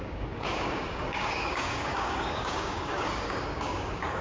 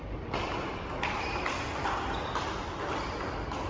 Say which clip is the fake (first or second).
first